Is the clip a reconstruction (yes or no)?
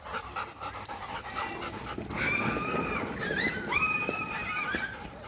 yes